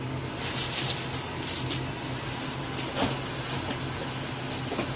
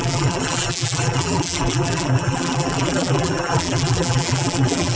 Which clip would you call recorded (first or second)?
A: first